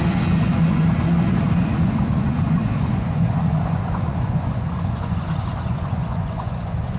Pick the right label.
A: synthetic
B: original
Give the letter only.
A